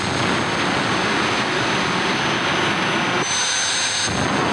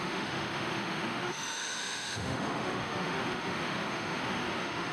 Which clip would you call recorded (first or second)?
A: first